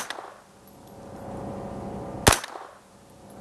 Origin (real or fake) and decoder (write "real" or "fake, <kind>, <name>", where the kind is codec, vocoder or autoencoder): real